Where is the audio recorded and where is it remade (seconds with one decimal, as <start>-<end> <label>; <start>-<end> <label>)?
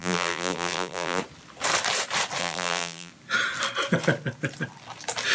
0.0-1.2 remade; 1.2-2.4 recorded; 2.4-3.1 remade; 3.1-5.3 recorded